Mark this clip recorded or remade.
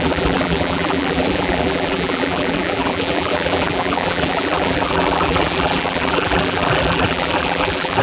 remade